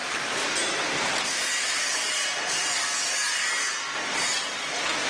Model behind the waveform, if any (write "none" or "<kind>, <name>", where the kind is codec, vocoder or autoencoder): none